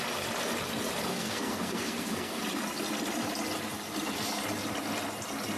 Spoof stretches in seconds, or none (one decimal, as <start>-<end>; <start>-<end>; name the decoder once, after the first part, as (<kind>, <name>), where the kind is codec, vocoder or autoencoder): 1.1-2.4 (codec, SNAC)